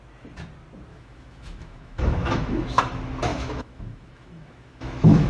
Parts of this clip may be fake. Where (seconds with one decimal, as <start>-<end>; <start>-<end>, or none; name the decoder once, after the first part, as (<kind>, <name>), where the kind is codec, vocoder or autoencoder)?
0.9-2.8 (autoencoder, DAC-VAE); 3.3-5.3